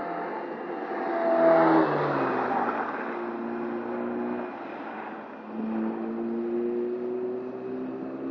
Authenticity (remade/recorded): recorded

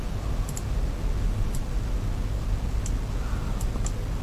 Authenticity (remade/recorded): recorded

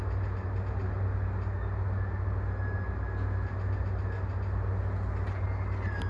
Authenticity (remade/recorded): recorded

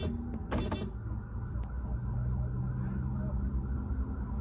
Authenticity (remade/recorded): recorded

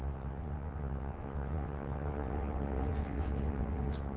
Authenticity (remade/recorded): remade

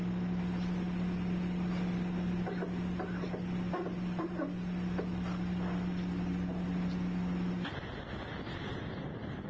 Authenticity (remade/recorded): recorded